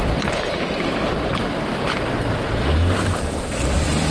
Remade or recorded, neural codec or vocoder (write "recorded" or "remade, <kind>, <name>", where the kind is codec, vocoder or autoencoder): remade, vocoder, BigVGAN v2